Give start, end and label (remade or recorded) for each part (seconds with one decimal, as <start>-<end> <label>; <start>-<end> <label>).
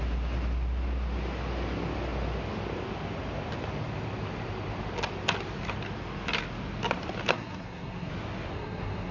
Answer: 0.0-7.3 recorded; 7.3-8.1 remade; 8.1-8.5 recorded; 8.5-9.1 remade